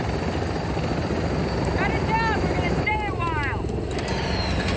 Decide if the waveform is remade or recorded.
recorded